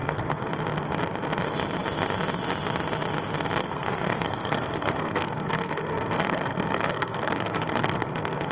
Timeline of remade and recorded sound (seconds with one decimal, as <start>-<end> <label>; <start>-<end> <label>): 0.0-0.5 remade; 0.5-3.6 recorded; 3.6-8.5 remade